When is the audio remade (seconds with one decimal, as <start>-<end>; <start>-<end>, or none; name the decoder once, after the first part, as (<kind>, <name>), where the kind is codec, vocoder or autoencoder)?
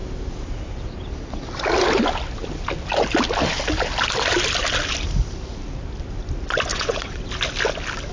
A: 6.7-7.3 (vocoder, WaveNeXt)